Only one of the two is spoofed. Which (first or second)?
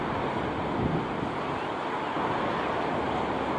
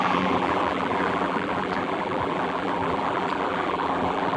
second